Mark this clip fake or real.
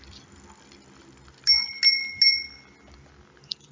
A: real